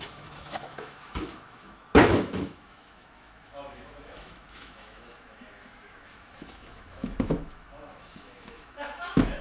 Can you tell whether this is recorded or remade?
remade